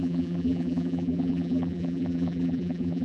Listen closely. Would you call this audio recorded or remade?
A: remade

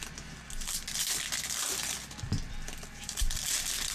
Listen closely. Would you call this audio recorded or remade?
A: recorded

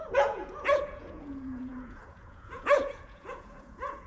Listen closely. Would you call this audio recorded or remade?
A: remade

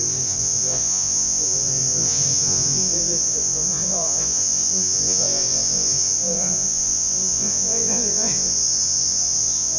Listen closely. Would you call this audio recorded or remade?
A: remade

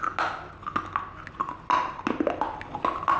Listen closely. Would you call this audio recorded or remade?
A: recorded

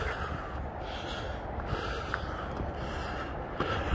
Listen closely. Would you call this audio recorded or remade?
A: recorded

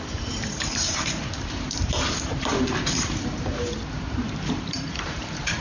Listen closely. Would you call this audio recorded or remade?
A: remade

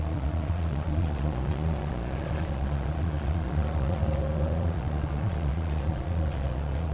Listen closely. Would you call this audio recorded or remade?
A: remade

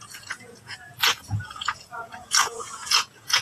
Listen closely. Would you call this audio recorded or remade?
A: remade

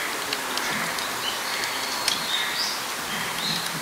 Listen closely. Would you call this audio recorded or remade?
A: recorded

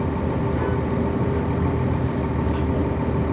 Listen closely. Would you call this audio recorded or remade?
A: recorded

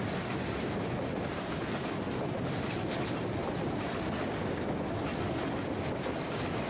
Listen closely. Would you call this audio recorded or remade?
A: recorded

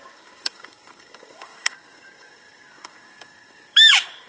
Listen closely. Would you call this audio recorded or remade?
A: remade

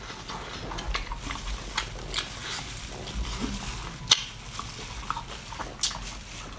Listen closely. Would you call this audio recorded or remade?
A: recorded